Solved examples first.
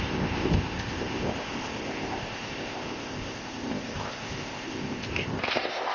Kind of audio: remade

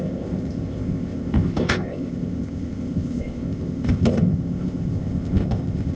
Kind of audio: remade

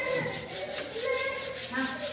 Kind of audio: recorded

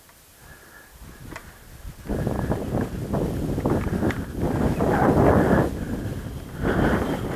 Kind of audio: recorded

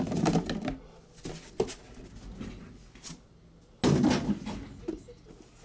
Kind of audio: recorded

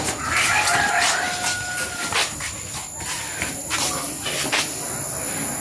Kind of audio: recorded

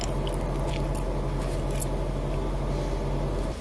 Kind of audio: recorded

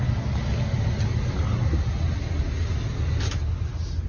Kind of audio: recorded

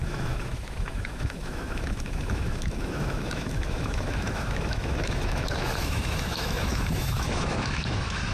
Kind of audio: remade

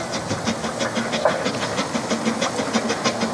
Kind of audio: recorded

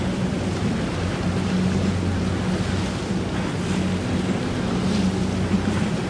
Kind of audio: recorded